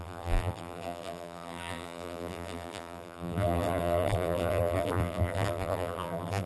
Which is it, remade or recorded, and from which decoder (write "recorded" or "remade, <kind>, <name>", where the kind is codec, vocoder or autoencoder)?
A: remade, vocoder, BigVGAN v2